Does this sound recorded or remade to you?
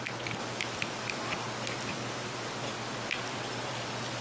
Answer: recorded